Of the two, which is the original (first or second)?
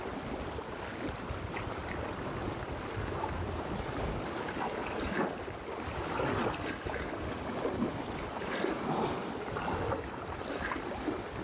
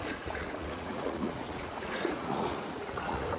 first